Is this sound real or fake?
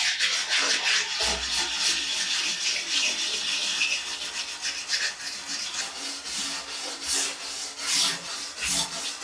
real